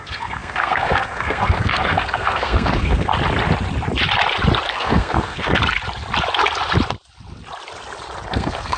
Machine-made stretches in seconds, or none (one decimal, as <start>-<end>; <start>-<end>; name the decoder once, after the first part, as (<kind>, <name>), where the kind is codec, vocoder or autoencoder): 0.0-3.1 (codec, SNAC); 4.7-5.6; 8.3-8.8

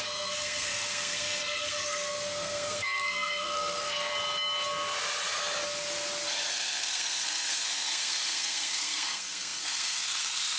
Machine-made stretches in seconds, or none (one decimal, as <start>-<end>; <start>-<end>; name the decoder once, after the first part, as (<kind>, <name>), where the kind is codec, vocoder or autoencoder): 0.0-4.1 (codec, SNAC); 6.5-10.6